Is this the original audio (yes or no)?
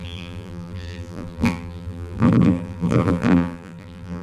no